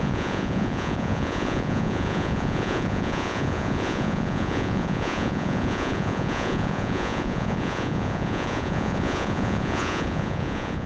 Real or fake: fake